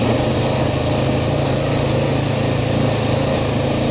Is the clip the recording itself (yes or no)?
yes